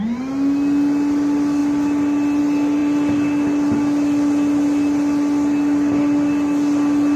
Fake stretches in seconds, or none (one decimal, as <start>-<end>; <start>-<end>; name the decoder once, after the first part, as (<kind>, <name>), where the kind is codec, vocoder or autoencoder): none

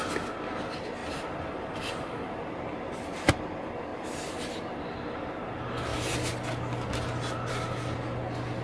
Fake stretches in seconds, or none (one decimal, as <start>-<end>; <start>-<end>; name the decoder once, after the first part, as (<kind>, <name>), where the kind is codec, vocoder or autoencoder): 1.0-3.3 (vocoder, BigVGAN v2); 3.9-4.5

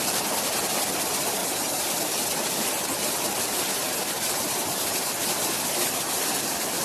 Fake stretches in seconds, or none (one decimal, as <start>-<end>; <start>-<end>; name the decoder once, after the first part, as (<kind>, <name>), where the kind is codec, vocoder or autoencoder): 1.4-5.5 (vocoder, BigVGAN v2)

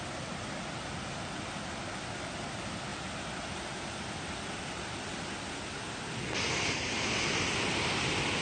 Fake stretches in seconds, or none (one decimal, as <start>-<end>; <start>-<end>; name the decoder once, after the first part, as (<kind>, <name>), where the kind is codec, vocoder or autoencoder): 0.0-8.4 (vocoder, BigVGAN v2)